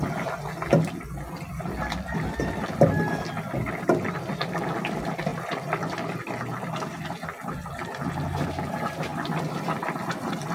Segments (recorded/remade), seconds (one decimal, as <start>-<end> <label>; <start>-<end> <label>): 0.0-10.5 recorded